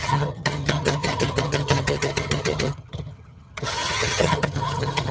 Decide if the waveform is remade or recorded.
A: remade